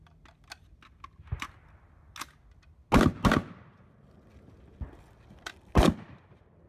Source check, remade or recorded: recorded